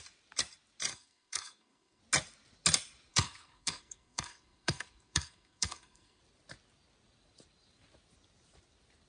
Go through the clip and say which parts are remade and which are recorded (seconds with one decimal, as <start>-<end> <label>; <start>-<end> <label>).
0.0-0.9 recorded; 0.9-2.0 remade; 2.0-3.1 recorded; 3.1-6.2 remade; 6.2-9.1 recorded